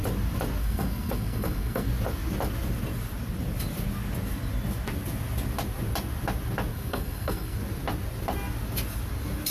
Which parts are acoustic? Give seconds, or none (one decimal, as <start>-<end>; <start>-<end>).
0.0-0.6; 1.9-6.7; 7.6-9.5